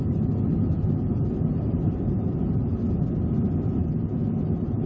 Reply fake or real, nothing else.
real